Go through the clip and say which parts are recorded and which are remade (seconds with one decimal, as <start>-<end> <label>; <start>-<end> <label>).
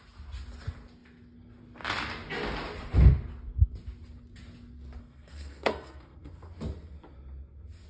0.0-5.0 recorded; 5.0-6.5 remade; 6.5-7.9 recorded